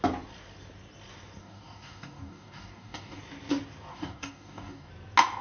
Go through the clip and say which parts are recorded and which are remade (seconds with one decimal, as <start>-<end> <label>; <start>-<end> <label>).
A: 0.0-1.4 recorded; 1.4-3.2 remade; 3.2-3.9 recorded; 3.9-4.9 remade; 4.9-5.4 recorded